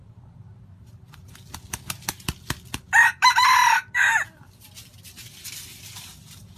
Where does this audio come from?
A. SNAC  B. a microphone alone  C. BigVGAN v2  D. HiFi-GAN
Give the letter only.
C